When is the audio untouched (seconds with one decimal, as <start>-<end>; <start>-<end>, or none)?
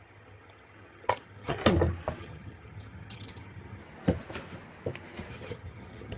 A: 1.6-2.2; 3.8-5.3